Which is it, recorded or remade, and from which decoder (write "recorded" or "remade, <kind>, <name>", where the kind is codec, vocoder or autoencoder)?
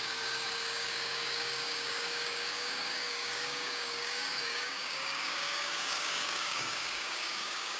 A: remade, codec, DAC